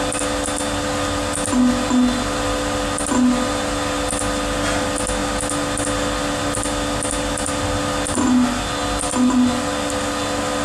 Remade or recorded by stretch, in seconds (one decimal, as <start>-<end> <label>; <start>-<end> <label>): 0.0-10.6 recorded